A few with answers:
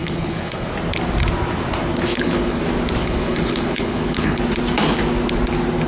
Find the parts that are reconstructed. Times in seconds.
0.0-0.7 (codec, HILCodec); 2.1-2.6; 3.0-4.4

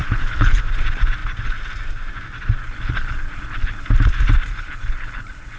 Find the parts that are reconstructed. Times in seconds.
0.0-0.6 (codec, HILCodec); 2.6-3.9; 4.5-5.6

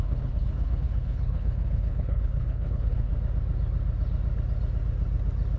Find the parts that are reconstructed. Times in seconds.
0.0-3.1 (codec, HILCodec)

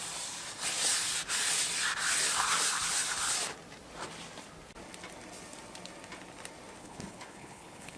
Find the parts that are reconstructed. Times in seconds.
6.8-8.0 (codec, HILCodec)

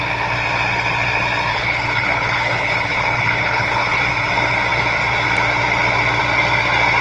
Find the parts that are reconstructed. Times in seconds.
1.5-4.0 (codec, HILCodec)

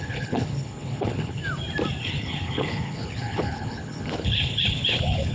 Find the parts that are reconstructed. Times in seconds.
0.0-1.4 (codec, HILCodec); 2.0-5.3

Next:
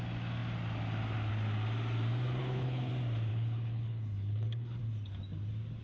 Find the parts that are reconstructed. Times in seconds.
2.4-2.9 (codec, HILCodec); 3.3-4.8